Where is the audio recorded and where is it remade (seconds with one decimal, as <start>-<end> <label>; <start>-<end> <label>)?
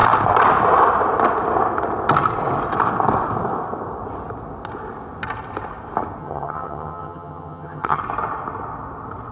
0.0-6.2 recorded; 6.2-8.0 remade; 8.0-9.3 recorded